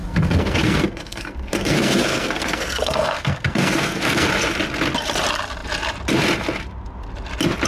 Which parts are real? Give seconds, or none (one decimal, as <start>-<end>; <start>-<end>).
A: 4.3-7.7